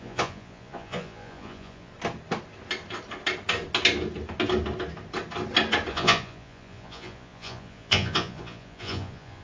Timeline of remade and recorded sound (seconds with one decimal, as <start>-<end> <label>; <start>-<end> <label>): 0.0-1.9 remade; 1.9-5.9 recorded; 5.9-9.4 remade